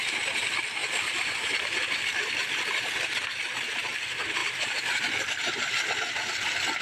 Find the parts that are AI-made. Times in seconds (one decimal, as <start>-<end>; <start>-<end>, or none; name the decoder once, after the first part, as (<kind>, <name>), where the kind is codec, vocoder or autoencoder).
0.8-2.0 (vocoder, BigVGAN v2); 4.4-5.0